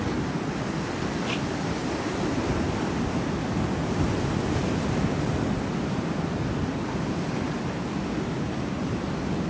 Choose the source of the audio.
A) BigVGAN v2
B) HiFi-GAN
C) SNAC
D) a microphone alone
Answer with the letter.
D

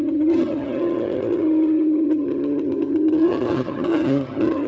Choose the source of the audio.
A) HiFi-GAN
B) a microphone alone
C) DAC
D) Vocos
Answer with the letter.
A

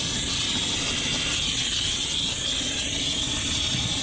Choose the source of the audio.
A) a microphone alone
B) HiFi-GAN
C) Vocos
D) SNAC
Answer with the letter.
A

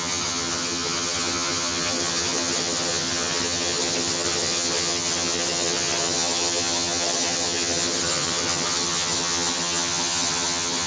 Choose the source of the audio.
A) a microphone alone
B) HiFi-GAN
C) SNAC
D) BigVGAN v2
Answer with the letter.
B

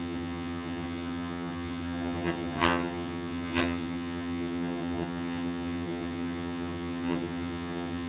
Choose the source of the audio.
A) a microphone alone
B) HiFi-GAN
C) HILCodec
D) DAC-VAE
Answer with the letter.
B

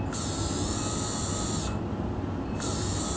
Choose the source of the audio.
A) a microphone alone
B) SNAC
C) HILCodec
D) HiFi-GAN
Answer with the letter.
A